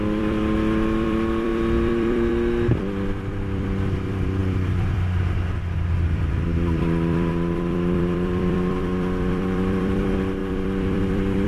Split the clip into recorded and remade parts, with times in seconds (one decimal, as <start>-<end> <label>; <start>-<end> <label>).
0.0-11.5 remade